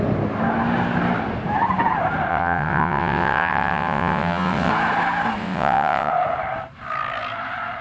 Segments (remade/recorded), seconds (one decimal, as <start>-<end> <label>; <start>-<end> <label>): 0.0-2.3 recorded; 2.3-4.7 remade; 4.7-5.4 recorded; 5.4-6.1 remade; 6.1-7.8 recorded